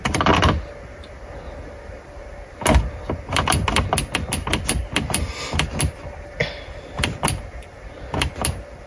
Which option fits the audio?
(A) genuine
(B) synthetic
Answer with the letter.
A